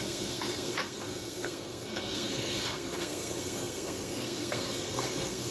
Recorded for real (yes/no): no